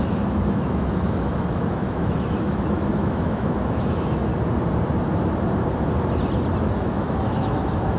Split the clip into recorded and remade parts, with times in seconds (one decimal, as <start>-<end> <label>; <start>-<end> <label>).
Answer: 0.0-4.3 remade; 4.3-6.7 recorded; 6.7-8.0 remade